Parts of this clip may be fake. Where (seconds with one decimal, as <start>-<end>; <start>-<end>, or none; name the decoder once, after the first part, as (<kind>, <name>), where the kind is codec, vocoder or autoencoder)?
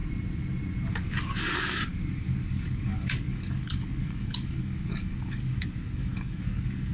0.9-6.9 (codec, DAC)